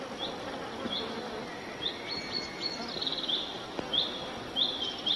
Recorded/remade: recorded